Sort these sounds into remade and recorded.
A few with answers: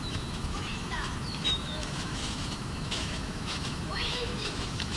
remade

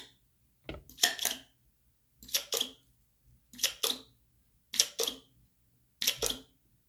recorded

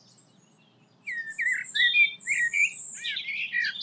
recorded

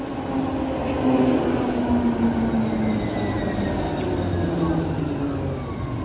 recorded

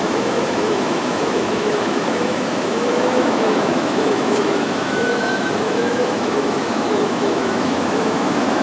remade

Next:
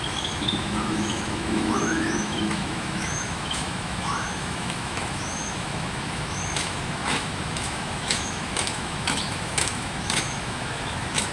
remade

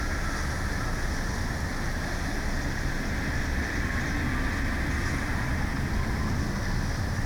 recorded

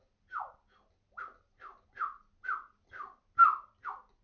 recorded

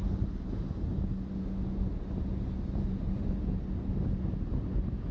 recorded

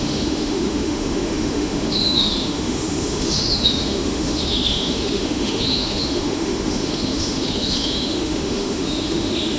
remade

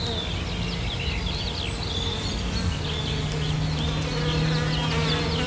recorded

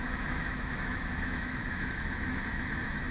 remade